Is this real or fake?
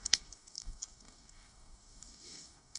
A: fake